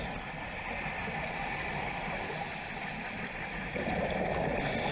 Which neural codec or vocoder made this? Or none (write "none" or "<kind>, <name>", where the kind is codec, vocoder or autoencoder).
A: none